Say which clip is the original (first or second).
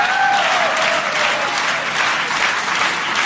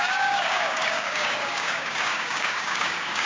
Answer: first